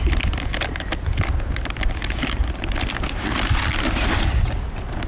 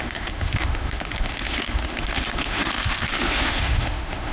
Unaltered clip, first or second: first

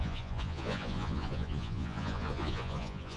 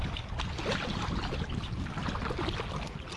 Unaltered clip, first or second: second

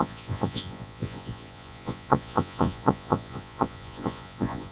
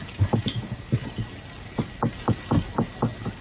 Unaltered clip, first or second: second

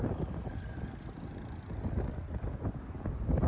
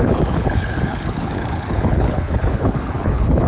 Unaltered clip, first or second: first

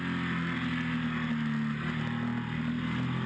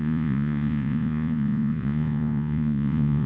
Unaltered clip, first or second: first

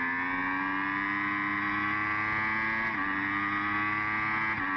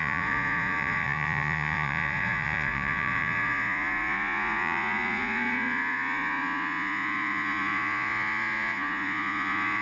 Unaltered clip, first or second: first